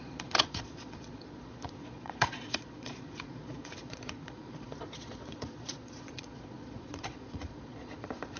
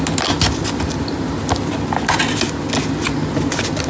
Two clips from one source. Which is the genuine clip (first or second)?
second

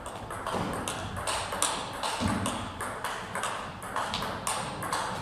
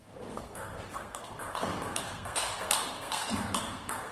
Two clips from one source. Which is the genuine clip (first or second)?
first